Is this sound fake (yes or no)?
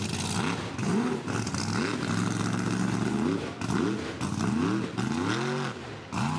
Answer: no